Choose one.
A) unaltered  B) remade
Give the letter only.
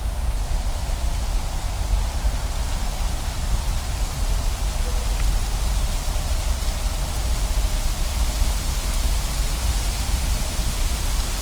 A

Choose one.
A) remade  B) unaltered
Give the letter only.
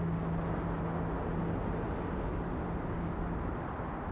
B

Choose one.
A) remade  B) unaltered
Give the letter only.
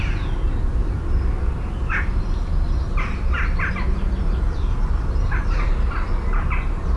B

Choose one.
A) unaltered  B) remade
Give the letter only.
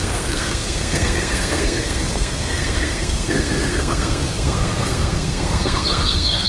B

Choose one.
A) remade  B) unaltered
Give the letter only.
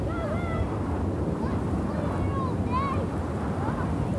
B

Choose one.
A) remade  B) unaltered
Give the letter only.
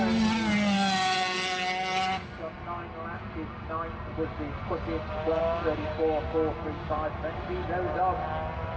B